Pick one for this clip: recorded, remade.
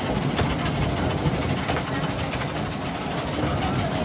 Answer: recorded